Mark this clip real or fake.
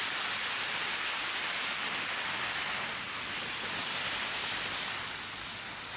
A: real